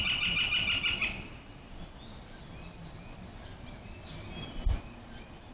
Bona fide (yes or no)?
yes